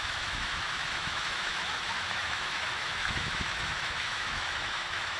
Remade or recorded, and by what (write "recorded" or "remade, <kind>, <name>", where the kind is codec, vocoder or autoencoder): remade, autoencoder, DAC-VAE